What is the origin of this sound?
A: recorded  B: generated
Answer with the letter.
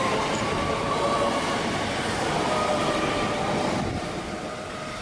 A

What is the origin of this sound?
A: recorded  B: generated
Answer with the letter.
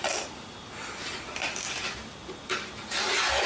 A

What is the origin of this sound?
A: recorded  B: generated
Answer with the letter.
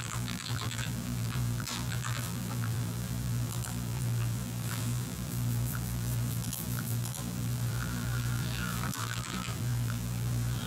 B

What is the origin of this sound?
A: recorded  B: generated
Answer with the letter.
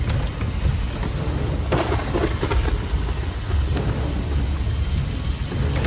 A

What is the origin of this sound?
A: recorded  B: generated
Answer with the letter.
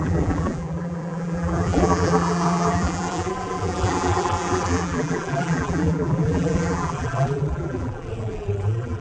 B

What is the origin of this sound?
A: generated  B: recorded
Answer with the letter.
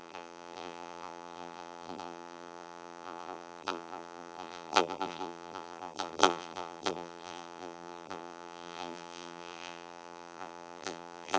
A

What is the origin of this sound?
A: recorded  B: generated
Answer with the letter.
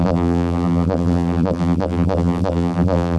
B